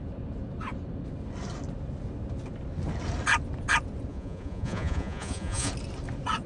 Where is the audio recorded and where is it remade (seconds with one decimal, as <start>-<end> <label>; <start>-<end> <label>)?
0.0-4.1 recorded; 4.1-5.7 remade; 5.7-6.5 recorded